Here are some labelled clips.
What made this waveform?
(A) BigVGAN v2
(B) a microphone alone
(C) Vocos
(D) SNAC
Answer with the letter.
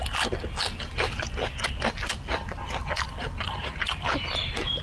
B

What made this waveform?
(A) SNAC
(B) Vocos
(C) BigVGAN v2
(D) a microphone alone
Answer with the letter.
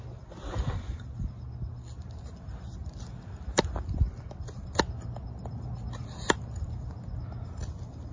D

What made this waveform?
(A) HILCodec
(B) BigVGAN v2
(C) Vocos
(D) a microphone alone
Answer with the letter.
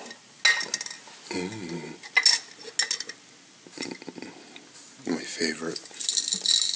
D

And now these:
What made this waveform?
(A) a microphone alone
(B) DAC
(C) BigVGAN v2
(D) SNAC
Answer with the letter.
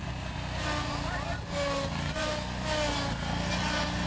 A